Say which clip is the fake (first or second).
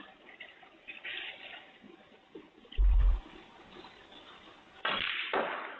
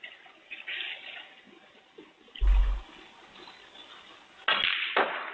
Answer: first